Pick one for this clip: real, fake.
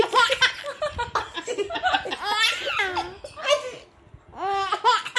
real